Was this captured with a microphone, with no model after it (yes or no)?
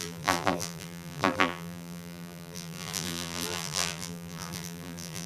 no